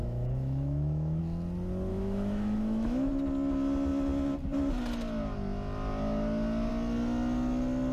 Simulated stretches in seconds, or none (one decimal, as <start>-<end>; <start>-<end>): 0.0-1.2; 1.9-3.1